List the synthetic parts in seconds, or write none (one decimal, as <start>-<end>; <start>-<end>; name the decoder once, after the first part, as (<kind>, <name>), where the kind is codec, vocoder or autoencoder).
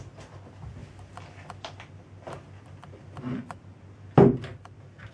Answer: 0.8-3.8 (vocoder, BigVGAN v2); 4.5-5.1